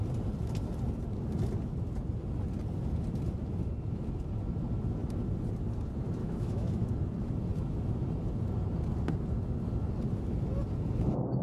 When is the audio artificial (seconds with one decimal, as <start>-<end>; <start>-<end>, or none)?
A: 6.2-6.9